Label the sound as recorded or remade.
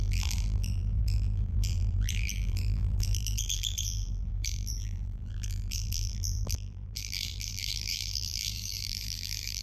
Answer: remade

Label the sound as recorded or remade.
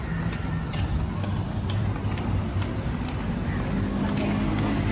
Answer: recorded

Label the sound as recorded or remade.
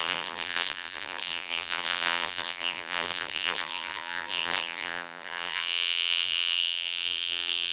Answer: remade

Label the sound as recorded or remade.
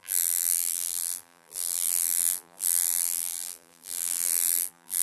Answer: remade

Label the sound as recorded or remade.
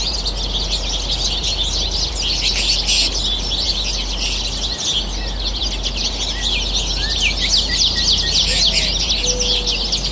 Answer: recorded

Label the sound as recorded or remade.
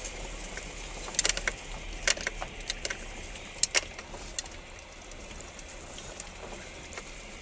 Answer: recorded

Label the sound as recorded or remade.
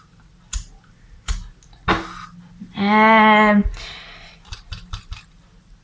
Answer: recorded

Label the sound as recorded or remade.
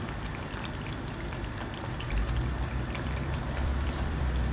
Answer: remade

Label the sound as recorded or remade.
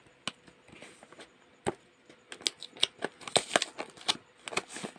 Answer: recorded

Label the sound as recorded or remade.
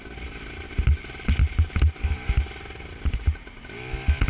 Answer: recorded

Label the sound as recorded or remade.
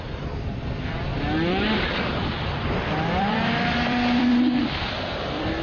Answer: remade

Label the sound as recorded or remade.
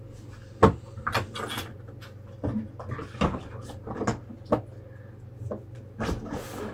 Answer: recorded